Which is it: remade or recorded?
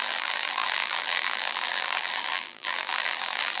remade